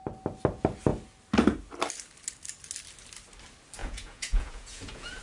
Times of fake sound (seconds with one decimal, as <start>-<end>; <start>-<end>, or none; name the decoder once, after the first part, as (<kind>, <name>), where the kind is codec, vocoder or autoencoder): 3.8-5.2 (vocoder, Vocos)